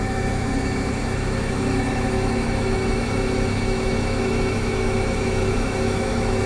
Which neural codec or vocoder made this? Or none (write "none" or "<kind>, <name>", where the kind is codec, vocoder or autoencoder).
autoencoder, DAC-VAE